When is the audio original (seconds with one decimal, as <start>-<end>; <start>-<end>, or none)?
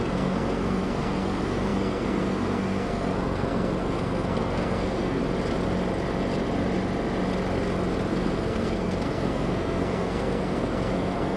5.2-8.1